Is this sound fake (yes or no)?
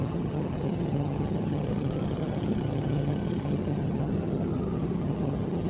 yes